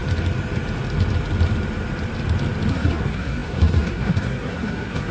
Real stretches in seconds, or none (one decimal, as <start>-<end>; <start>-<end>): 0.0-2.7